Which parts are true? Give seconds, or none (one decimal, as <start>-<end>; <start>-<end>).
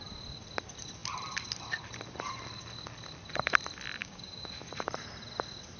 0.0-4.0; 4.5-5.8